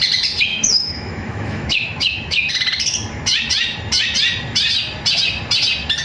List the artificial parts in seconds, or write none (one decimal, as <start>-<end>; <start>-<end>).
0.5-2.5

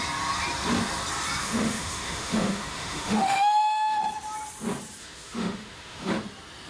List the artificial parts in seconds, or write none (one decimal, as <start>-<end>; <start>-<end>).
1.4-4.0; 5.0-6.1

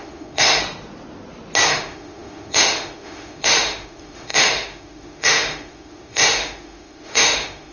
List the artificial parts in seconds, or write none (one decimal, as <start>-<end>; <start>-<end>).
0.0-0.6; 1.7-7.7

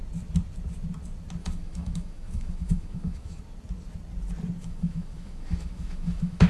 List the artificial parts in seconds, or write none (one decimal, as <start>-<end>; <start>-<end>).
1.4-3.4; 4.6-6.5

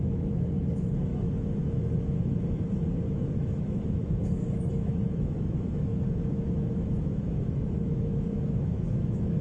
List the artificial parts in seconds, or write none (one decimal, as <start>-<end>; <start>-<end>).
0.0-9.4

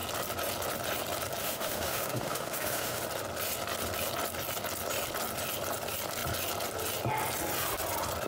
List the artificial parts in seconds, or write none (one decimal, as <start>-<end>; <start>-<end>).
1.4-3.0